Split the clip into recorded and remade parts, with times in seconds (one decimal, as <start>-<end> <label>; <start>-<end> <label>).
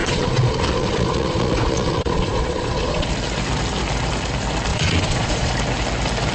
0.0-3.1 remade; 3.1-4.7 recorded; 4.7-5.5 remade; 5.5-6.3 recorded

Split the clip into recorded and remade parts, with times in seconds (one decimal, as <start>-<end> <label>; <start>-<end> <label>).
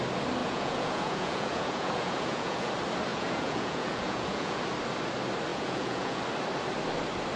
0.0-0.4 recorded; 0.4-2.7 remade; 2.7-3.1 recorded; 3.1-4.6 remade; 4.6-5.5 recorded; 5.5-6.2 remade; 6.2-7.4 recorded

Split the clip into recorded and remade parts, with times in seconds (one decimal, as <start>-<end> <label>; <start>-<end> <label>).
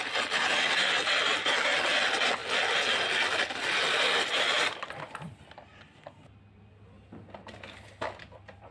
0.0-8.7 recorded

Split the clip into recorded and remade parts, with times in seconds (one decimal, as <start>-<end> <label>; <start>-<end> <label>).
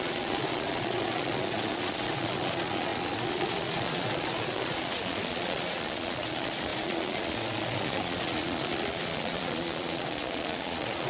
0.0-11.1 remade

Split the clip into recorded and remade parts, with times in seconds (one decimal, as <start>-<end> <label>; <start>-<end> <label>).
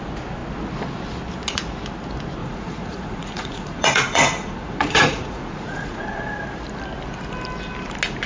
0.0-2.4 recorded; 2.4-6.0 remade; 6.0-8.3 recorded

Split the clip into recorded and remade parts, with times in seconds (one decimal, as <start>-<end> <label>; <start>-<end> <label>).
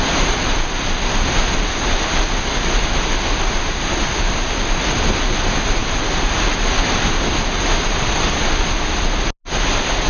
0.0-10.1 recorded